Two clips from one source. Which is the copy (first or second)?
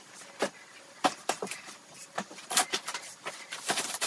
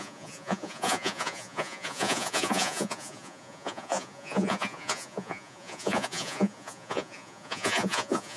second